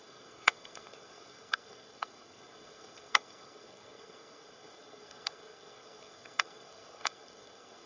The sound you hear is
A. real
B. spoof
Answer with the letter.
B